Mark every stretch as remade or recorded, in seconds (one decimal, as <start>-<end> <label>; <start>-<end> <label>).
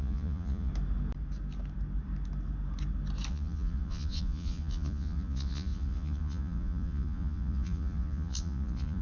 0.0-0.7 remade; 0.7-3.3 recorded; 3.3-9.0 remade